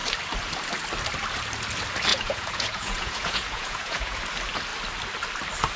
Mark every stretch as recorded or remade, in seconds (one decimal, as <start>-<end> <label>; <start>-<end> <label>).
0.0-2.1 recorded; 2.1-4.2 remade; 4.2-5.8 recorded